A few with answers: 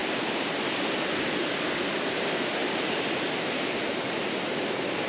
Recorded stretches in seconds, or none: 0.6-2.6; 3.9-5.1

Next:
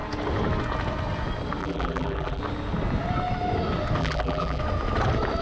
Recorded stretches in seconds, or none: 0.0-1.6; 2.4-4.0; 4.6-5.4

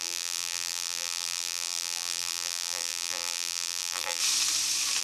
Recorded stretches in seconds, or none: 4.2-5.0

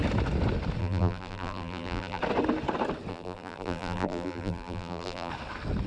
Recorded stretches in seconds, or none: 0.0-0.8; 2.2-3.1; 5.3-5.9

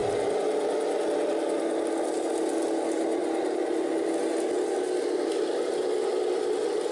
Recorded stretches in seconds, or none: 1.3-6.9

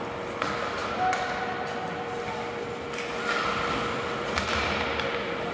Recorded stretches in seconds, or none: 0.0-5.5

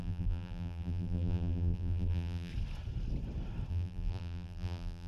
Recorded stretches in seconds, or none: 2.5-3.7

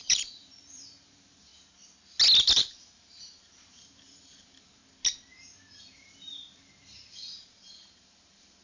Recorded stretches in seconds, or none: 1.5-2.8; 4.8-5.8